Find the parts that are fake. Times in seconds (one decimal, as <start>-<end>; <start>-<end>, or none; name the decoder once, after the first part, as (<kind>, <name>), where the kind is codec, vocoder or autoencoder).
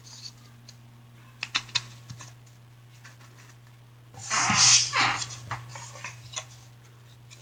none